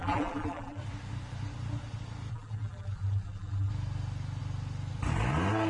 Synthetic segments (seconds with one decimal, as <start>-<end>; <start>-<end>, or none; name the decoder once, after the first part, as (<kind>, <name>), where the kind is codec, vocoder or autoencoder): 0.0-0.8 (vocoder, BigVGAN v2); 2.3-3.7